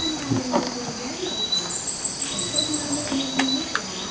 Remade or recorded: recorded